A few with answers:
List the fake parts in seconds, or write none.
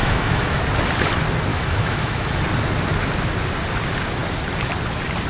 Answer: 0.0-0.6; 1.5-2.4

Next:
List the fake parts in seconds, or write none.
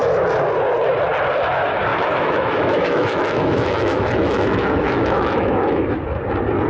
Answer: 1.9-5.9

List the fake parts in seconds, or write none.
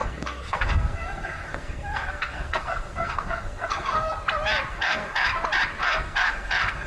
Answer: 0.0-4.1; 4.7-5.3; 5.8-6.9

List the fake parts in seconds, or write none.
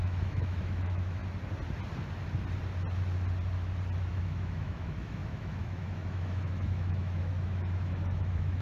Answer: 0.0-1.2; 4.1-8.6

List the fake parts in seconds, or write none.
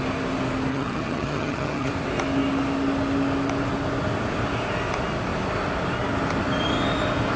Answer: 0.7-1.9